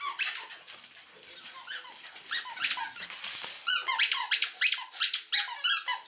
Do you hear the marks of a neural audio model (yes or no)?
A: no